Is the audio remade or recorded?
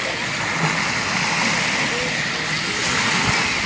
recorded